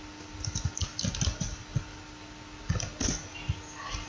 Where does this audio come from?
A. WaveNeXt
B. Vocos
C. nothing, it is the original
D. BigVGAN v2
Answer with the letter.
C